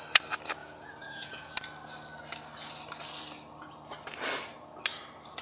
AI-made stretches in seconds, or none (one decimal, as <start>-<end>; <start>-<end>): 0.6-1.5

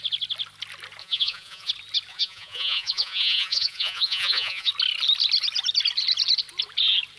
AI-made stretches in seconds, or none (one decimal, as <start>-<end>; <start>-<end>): 1.0-1.7; 2.1-4.7

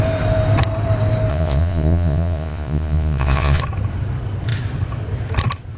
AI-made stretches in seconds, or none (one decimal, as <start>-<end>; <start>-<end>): 1.3-3.6